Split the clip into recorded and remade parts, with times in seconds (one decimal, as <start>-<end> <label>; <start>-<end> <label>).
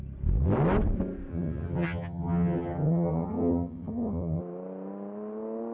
0.0-1.3 recorded; 1.3-4.4 remade; 4.4-5.7 recorded